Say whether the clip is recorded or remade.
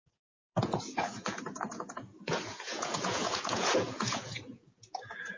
remade